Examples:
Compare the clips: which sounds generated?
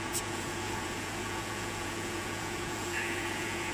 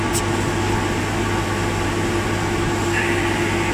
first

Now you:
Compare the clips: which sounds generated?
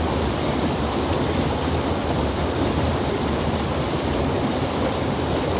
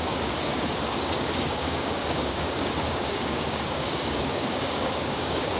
second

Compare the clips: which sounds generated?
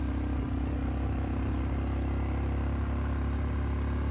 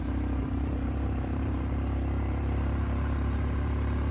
second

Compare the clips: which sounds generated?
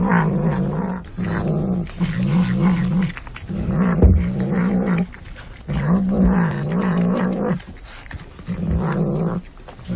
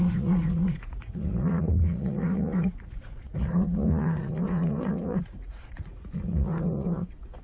second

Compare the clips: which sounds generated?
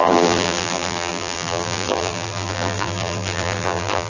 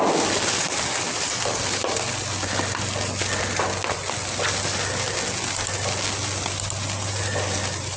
first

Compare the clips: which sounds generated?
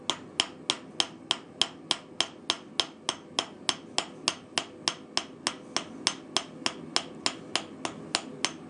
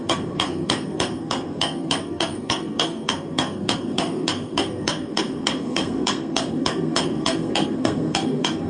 second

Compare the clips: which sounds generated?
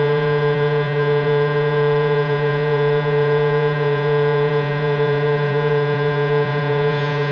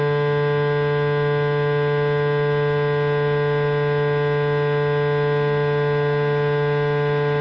first